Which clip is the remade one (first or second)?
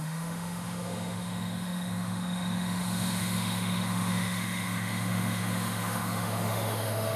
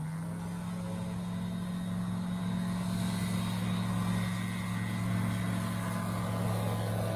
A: first